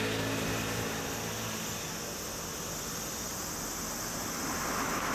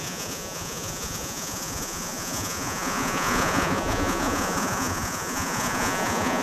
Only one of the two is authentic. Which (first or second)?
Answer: first